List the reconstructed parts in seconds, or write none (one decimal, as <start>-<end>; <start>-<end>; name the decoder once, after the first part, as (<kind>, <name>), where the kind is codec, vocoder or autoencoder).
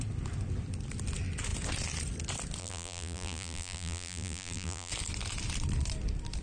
2.6-4.9 (vocoder, BigVGAN v2)